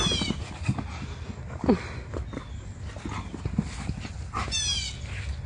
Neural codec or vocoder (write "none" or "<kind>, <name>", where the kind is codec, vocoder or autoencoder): none